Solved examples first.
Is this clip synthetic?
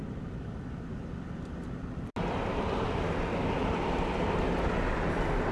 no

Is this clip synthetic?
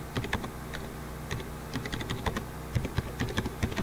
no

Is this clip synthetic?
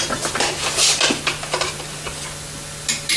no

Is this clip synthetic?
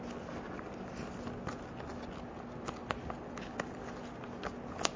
no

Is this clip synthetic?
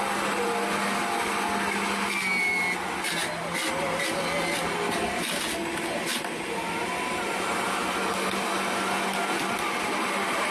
no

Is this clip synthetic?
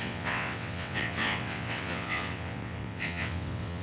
yes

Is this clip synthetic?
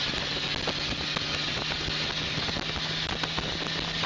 no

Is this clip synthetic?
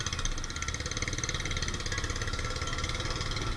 no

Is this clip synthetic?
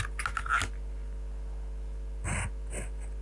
no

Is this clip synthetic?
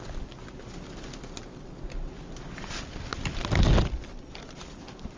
no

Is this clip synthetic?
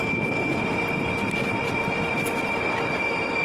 no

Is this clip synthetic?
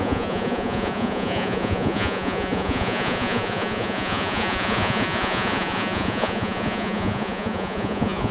yes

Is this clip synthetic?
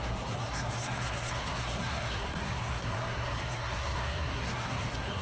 yes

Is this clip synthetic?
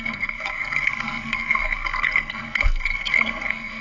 yes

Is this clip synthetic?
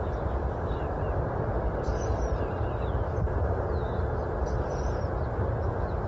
no